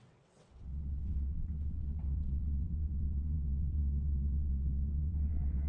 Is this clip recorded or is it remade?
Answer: remade